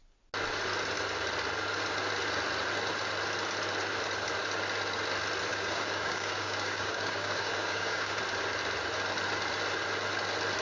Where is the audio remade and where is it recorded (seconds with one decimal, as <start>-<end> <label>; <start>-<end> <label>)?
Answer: 0.0-5.5 recorded; 5.5-8.2 remade; 8.2-10.6 recorded

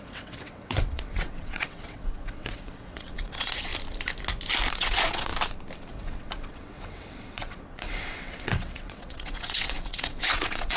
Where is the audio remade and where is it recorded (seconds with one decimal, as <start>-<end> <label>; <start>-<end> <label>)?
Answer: 0.0-3.7 remade; 3.7-4.7 recorded; 4.7-5.3 remade; 5.3-5.9 recorded; 5.9-10.8 remade

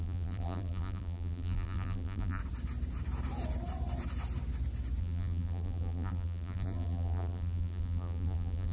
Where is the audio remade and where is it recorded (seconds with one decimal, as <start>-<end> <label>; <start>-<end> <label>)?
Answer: 0.0-2.4 remade; 2.4-5.0 recorded; 5.0-8.7 remade

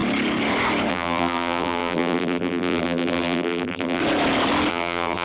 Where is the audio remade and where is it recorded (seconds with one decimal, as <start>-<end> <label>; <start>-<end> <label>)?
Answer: 0.0-0.9 recorded; 0.9-4.0 remade; 4.0-4.7 recorded; 4.7-5.2 remade

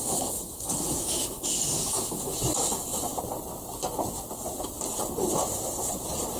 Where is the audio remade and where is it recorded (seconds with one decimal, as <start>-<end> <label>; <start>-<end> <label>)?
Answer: 0.0-3.1 remade; 3.1-6.4 recorded

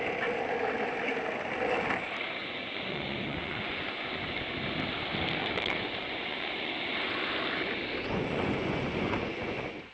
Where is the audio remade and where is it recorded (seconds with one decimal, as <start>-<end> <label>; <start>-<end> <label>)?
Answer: 0.0-2.4 recorded; 2.4-4.3 remade; 4.3-5.4 recorded; 5.4-6.7 remade; 6.7-8.0 recorded; 8.0-9.9 remade

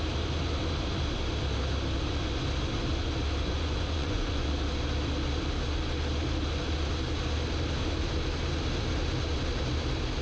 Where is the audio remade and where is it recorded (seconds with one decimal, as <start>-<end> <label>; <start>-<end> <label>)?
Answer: 0.0-3.4 recorded; 3.4-4.5 remade; 4.5-10.2 recorded

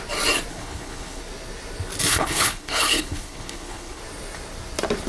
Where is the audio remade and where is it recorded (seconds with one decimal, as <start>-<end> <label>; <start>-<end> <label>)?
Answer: 0.0-0.5 recorded; 0.5-1.2 remade; 1.2-2.1 recorded; 2.1-4.0 remade; 4.0-5.1 recorded